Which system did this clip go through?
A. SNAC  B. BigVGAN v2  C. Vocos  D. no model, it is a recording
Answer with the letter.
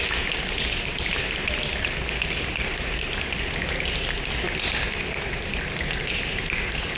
D